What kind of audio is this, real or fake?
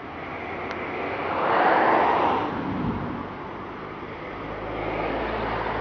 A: real